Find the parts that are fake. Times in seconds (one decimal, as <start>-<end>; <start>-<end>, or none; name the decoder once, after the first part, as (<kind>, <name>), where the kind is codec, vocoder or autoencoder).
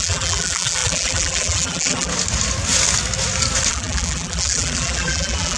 0.0-2.1 (vocoder, BigVGAN v2); 3.7-5.6